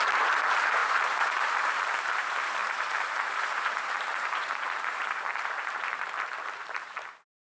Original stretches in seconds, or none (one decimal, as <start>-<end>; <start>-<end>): none

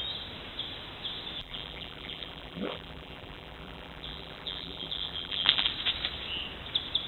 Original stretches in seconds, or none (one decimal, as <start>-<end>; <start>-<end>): 0.0-1.4; 5.7-7.1